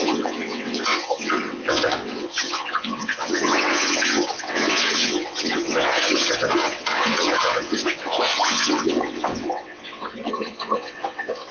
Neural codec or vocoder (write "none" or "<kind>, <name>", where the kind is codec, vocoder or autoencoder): vocoder, WaveNeXt